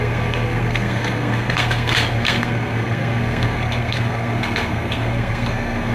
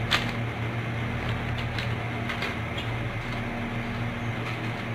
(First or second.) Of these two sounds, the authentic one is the second